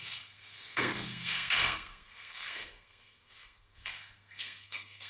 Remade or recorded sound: remade